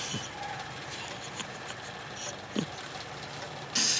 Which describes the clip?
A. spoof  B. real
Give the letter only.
B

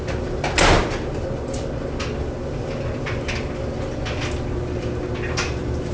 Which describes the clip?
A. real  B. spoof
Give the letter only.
A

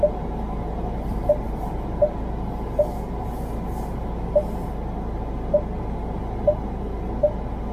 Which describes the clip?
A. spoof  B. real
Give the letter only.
B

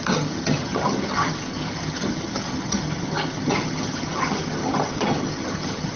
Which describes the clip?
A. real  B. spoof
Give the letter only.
B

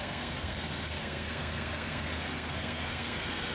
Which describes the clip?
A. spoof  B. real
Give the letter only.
A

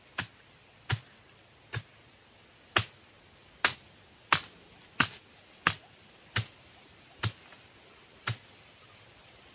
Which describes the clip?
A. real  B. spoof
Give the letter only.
A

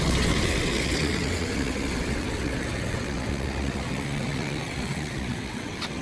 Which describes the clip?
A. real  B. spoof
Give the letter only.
B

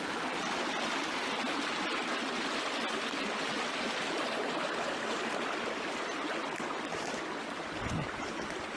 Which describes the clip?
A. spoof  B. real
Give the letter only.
B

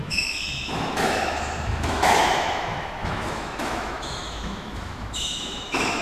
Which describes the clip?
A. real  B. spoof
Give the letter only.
B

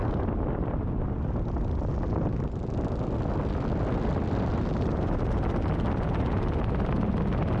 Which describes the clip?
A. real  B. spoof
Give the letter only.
A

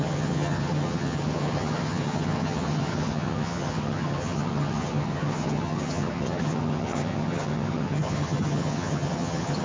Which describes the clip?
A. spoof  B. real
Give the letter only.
A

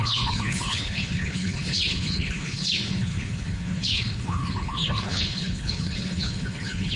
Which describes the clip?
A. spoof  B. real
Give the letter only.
A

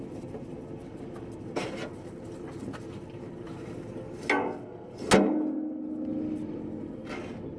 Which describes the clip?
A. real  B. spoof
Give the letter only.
A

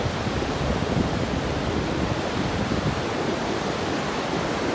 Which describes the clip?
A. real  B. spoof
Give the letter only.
A